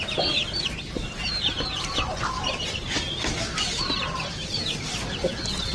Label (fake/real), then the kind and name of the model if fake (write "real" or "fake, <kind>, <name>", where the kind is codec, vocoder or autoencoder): fake, vocoder, BigVGAN v2